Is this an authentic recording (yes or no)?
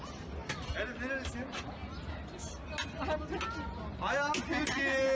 yes